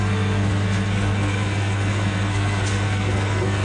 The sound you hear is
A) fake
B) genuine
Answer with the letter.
A